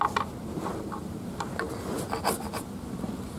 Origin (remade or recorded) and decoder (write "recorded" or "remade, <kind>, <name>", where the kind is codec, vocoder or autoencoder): recorded